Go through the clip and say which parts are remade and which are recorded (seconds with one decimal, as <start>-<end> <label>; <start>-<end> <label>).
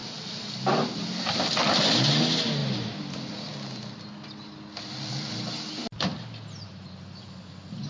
0.0-2.6 remade; 2.6-7.2 recorded; 7.2-7.9 remade